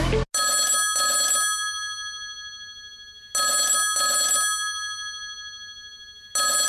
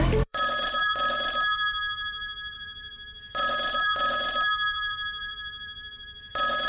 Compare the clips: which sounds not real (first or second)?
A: second